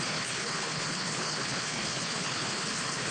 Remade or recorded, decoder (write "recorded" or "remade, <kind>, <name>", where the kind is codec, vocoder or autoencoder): remade, codec, HILCodec